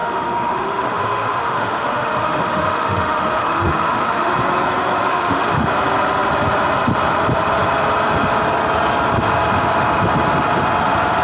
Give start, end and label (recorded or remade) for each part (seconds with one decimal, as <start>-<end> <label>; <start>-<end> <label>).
0.0-4.3 remade; 4.3-5.1 recorded; 5.1-5.7 remade; 5.7-11.2 recorded